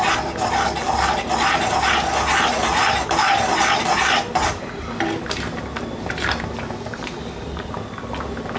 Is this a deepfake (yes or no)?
yes